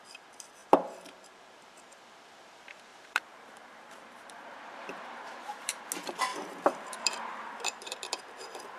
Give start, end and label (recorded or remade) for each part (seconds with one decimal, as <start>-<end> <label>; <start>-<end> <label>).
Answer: 0.0-0.6 recorded; 0.6-1.8 remade; 1.8-2.9 recorded; 2.9-5.8 remade; 5.8-6.3 recorded; 6.3-8.8 remade